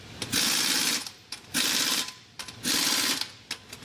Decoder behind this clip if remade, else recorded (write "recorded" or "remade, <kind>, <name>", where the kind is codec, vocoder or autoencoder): recorded